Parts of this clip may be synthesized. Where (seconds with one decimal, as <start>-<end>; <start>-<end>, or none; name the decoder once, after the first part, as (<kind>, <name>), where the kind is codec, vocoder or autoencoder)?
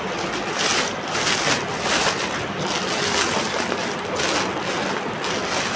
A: 0.7-4.2 (vocoder, BigVGAN v2)